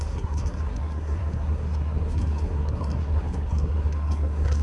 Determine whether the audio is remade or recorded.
remade